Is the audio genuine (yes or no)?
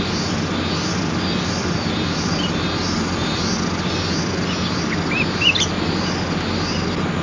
yes